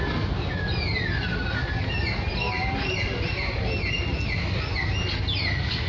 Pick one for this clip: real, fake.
real